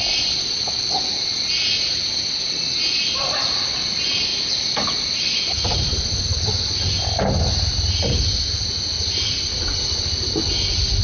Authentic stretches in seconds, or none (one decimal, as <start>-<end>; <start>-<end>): 0.0-11.0